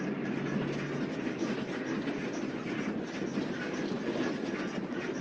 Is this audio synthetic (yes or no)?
no